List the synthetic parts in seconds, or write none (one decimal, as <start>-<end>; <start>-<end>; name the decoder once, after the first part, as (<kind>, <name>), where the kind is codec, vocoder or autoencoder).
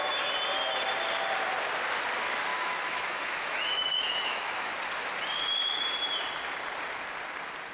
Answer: 2.5-4.7 (autoencoder, DAC-VAE)